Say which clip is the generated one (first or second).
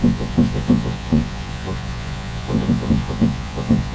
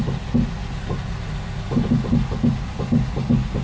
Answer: first